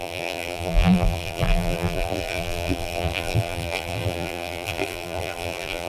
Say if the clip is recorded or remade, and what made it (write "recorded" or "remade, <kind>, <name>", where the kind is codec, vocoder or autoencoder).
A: remade, vocoder, BigVGAN v2